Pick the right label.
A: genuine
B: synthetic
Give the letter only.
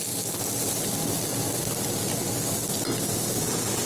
A